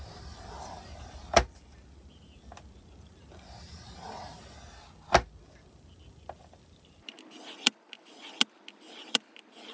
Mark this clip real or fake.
real